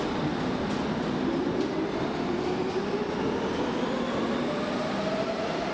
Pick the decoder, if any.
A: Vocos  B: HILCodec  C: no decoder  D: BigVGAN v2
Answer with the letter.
C